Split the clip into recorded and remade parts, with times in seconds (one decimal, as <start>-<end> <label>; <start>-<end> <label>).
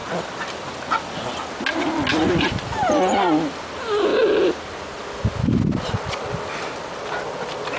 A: 0.0-1.3 remade; 1.3-7.8 recorded